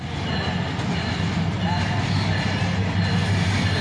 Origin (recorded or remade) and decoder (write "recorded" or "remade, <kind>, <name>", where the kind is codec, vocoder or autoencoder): recorded